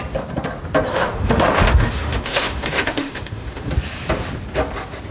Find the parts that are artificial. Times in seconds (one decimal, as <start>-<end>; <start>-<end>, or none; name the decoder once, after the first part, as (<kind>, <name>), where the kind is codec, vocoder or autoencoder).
0.9-3.7 (autoencoder, DAC-VAE)